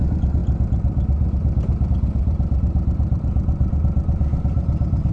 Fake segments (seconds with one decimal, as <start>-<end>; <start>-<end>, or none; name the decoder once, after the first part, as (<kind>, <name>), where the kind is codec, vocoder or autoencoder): none